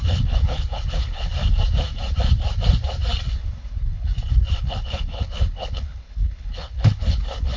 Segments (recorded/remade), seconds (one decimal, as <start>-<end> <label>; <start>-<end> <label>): 0.0-1.3 remade; 1.3-3.3 recorded; 3.3-4.1 remade; 4.1-4.6 recorded; 4.6-7.6 remade